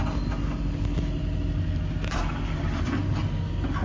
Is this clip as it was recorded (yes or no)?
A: yes